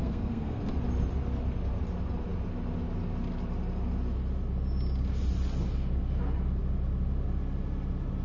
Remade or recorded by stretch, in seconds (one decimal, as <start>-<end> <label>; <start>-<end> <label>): 0.0-0.6 remade; 0.6-8.2 recorded